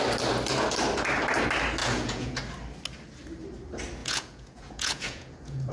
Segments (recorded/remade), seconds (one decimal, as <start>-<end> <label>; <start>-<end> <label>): 0.0-1.8 recorded; 1.8-2.4 remade; 2.4-4.0 recorded; 4.0-5.7 remade